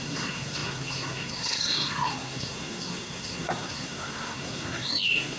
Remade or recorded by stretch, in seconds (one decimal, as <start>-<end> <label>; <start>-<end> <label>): 0.0-5.4 remade

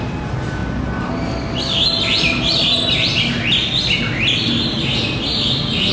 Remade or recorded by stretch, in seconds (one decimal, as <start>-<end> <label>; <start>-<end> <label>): 0.0-5.9 recorded

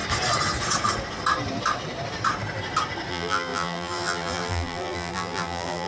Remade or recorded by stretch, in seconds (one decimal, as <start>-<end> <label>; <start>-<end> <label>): 0.0-3.1 recorded; 3.1-5.9 remade

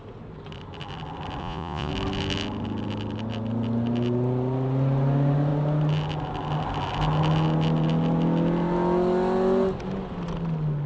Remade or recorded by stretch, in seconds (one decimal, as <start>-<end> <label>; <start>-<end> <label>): 0.0-1.4 recorded; 1.4-1.9 remade; 1.9-10.9 recorded

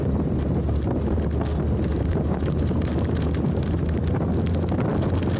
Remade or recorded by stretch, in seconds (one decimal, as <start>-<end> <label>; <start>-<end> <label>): 0.0-1.9 recorded; 1.9-4.1 remade; 4.1-5.4 recorded